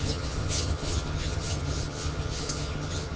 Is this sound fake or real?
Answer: fake